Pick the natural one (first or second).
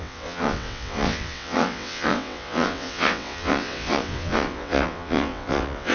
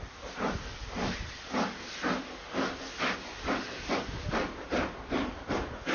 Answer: second